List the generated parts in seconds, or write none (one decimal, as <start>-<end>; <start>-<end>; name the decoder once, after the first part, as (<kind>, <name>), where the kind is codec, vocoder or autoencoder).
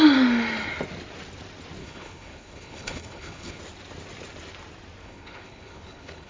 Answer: 1.8-3.6 (codec, HILCodec); 5.0-6.3